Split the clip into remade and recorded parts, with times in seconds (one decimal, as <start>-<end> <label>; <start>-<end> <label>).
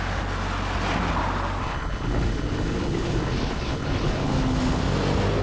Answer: 0.0-1.6 recorded; 1.6-4.8 remade; 4.8-5.4 recorded